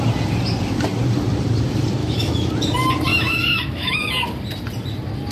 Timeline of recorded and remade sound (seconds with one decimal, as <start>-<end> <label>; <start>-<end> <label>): 0.0-2.0 recorded; 2.0-2.5 remade; 2.5-3.1 recorded; 3.1-4.0 remade; 4.0-5.3 recorded